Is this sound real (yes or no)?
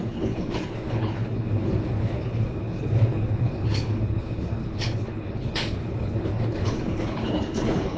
no